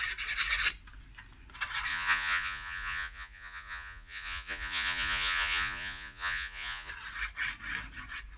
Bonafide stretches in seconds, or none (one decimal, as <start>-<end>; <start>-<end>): 0.0-1.9; 6.9-8.4